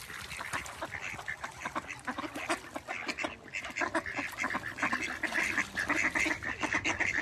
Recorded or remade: recorded